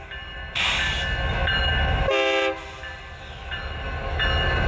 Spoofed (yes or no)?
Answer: no